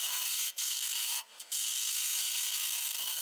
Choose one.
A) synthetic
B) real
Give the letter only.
A